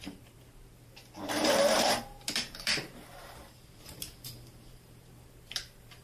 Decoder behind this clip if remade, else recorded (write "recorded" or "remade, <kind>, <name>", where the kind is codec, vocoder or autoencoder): remade, vocoder, BigVGAN v2